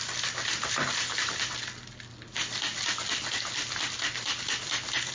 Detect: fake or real real